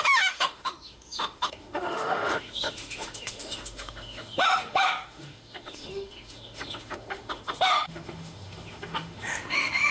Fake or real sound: fake